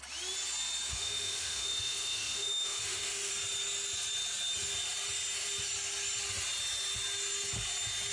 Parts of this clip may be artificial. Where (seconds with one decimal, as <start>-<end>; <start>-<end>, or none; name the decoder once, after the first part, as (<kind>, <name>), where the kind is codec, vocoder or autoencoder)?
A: 0.9-3.3 (autoencoder, DAC-VAE)